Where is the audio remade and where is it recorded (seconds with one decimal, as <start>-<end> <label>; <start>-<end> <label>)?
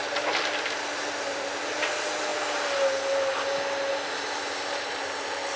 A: 0.0-5.6 recorded